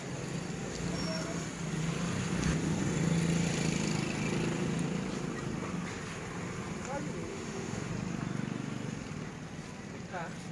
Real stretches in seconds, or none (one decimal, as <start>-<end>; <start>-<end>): 0.0-7.3; 7.9-10.5